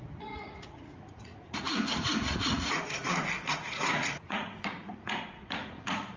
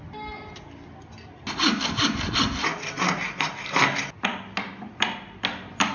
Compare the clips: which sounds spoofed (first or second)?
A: first